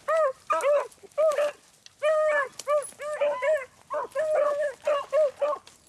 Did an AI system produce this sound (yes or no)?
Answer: no